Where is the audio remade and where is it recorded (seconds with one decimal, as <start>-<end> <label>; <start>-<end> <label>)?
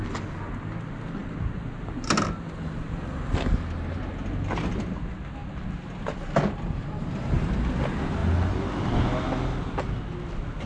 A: 0.0-10.7 recorded